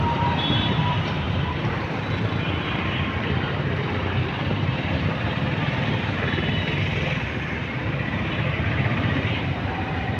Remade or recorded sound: remade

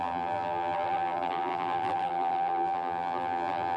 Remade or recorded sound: remade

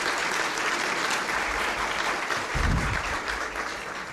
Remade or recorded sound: recorded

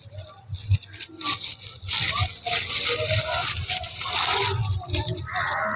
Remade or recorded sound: remade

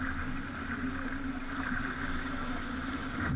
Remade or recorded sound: recorded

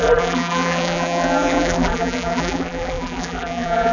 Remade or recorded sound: remade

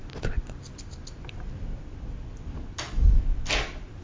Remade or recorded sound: recorded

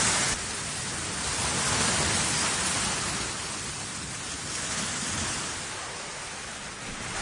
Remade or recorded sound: recorded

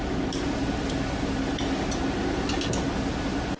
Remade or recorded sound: recorded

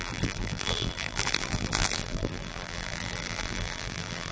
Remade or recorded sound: remade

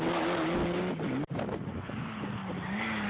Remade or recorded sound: recorded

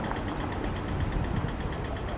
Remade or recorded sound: remade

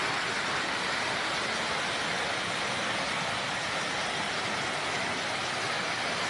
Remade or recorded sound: recorded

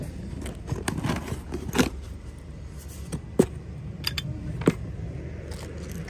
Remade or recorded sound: recorded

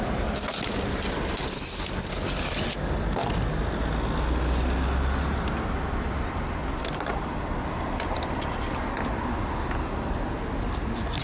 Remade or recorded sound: recorded